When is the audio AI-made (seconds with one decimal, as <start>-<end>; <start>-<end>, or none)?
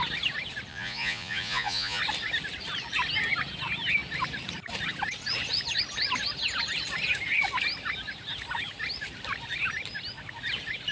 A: 0.7-2.0